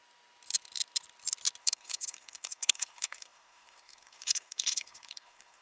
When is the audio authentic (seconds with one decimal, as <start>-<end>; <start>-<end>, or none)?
0.0-1.6